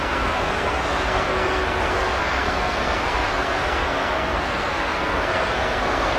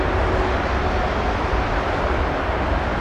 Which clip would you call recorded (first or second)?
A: second